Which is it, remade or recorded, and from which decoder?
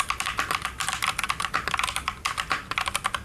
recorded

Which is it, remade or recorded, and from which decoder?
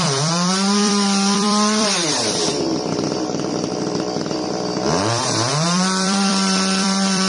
remade, vocoder, BigVGAN v2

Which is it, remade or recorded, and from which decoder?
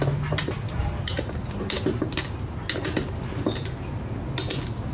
recorded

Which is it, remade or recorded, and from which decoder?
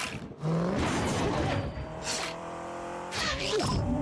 remade, vocoder, BigVGAN v2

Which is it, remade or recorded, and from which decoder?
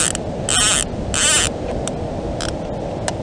recorded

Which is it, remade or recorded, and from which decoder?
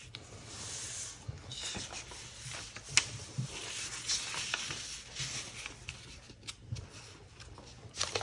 recorded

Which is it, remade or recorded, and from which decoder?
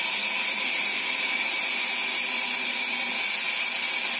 recorded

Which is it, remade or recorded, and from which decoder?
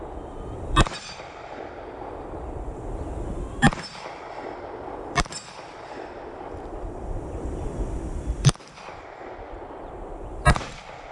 remade, vocoder, BigVGAN v2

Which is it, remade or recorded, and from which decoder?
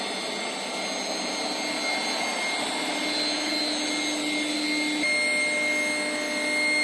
recorded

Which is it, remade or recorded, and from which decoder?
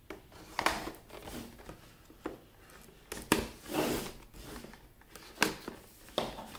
recorded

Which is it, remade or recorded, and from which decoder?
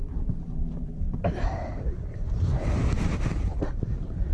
remade, vocoder, BigVGAN v2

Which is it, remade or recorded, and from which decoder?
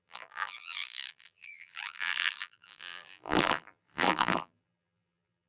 remade, vocoder, BigVGAN v2